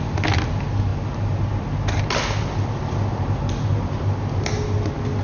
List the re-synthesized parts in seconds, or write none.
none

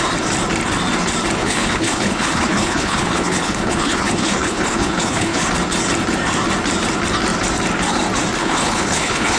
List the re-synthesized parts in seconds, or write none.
1.4-5.5 (codec, HILCodec); 8.4-9.4

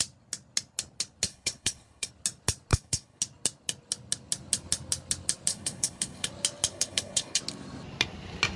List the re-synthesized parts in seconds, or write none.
1.3-2.1 (codec, HILCodec); 2.7-3.2; 5.5-6.3; 6.7-7.4

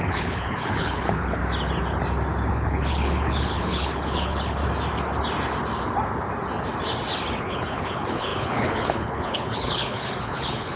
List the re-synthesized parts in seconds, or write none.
0.0-1.4 (codec, HILCodec); 2.5-4.6; 7.4-10.8

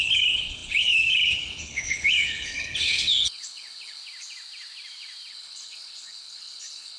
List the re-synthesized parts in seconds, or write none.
0.0-4.0 (codec, HILCodec); 5.3-7.0

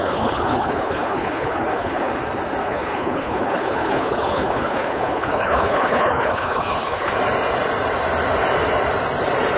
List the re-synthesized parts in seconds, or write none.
0.0-2.1 (codec, HILCodec); 2.6-7.1

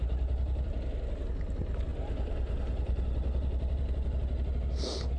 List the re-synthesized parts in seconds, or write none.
none

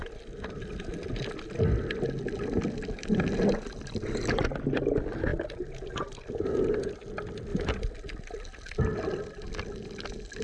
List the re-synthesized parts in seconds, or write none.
none